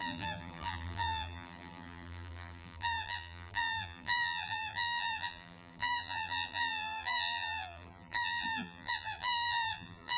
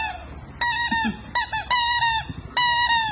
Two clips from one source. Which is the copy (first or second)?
first